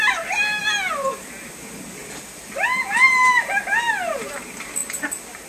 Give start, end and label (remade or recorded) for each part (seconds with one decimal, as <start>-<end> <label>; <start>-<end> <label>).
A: 0.0-5.5 recorded